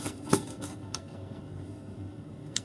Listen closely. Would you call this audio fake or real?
fake